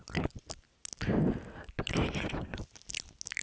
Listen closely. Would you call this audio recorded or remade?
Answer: recorded